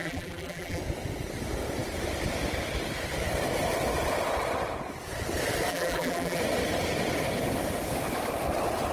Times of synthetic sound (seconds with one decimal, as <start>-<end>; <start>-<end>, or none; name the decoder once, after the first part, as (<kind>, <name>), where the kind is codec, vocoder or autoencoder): 0.0-0.8 (vocoder, BigVGAN v2); 5.7-6.4